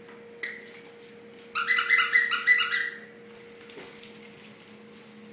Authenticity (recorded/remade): recorded